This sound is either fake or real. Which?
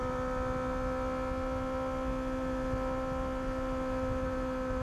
real